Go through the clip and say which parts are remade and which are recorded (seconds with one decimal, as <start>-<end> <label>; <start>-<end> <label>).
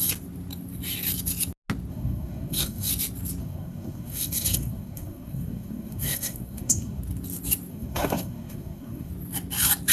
0.0-1.9 recorded; 1.9-2.9 remade; 2.9-3.4 recorded; 3.4-7.0 remade; 7.0-7.7 recorded; 7.7-9.1 remade; 9.1-9.9 recorded